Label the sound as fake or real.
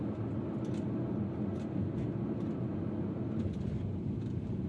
real